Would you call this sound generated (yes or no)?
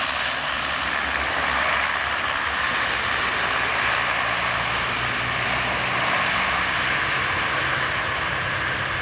no